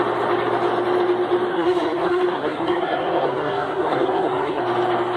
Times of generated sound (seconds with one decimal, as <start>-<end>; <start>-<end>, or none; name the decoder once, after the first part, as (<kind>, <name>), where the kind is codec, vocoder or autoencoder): 1.5-4.6 (codec, SNAC)